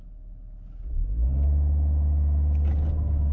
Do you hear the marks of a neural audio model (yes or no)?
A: no